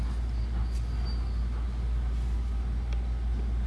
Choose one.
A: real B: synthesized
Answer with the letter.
A